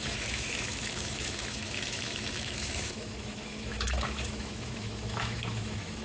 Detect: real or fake fake